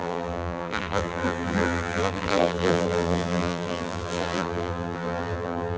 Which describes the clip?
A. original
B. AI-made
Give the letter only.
B